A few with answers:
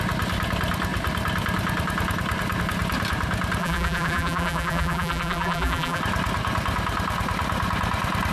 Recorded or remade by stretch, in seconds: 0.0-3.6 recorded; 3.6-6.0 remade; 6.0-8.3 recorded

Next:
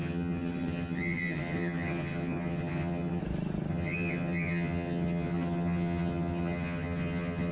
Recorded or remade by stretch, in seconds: 0.0-3.2 remade; 3.2-3.7 recorded; 3.7-7.5 remade

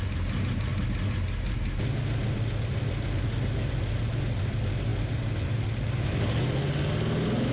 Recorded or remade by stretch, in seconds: 0.0-7.5 recorded

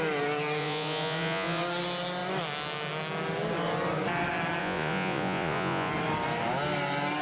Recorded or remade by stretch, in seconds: 0.0-0.6 recorded; 0.6-1.6 remade; 1.6-4.6 recorded; 4.6-5.9 remade; 5.9-7.2 recorded

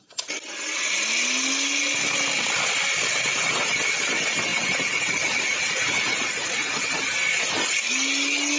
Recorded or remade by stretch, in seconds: 0.0-4.5 recorded; 4.5-6.8 remade; 6.8-8.6 recorded

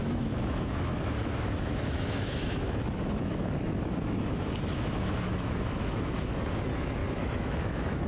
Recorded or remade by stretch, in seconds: 0.0-8.1 remade

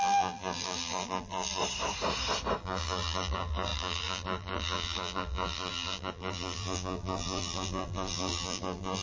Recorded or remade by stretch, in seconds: 0.0-1.6 remade; 1.6-2.6 recorded; 2.6-9.0 remade

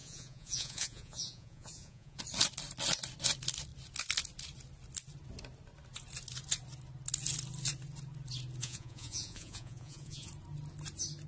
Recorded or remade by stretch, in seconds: 0.0-2.2 remade; 2.2-8.6 recorded; 8.6-10.3 remade; 10.3-11.3 recorded